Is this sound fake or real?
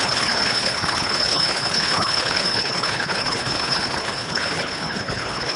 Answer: fake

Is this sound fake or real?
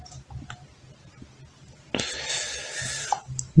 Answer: real